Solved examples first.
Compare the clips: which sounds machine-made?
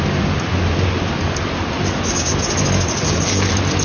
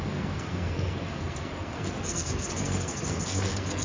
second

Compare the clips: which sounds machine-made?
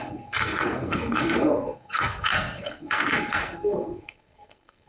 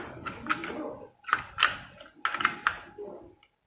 first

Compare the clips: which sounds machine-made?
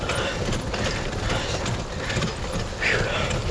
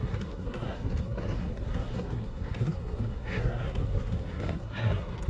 second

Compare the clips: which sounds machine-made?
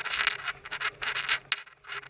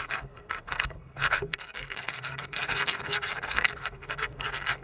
second